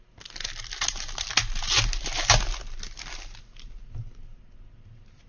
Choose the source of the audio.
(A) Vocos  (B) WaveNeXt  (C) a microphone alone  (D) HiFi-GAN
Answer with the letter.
C